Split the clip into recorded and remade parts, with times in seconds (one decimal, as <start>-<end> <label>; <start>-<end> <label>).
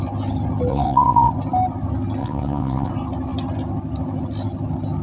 0.0-0.7 recorded; 0.7-1.3 remade; 1.3-2.2 recorded; 2.2-2.9 remade; 2.9-5.0 recorded